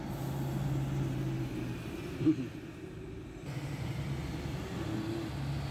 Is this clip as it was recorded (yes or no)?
yes